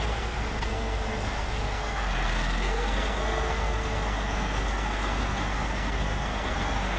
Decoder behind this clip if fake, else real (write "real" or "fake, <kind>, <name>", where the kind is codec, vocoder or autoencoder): fake, codec, SNAC